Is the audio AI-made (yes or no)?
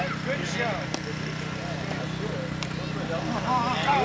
no